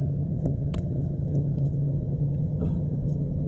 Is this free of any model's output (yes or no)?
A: no